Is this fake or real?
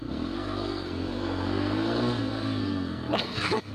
fake